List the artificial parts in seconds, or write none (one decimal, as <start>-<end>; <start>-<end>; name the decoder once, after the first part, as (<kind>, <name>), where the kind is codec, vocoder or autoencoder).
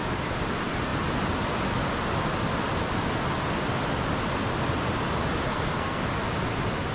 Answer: 5.5-6.0 (codec, SNAC)